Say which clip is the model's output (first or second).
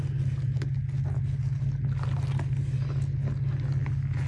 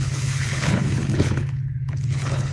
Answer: second